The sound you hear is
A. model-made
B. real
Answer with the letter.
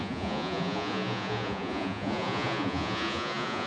A